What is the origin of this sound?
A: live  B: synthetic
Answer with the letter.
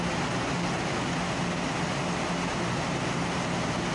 A